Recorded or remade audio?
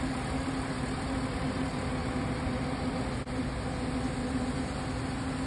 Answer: recorded